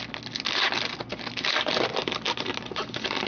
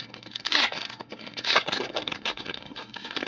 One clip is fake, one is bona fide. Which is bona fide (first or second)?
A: first